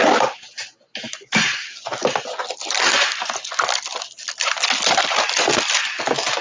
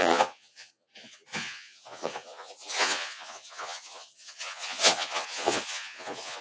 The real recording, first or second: first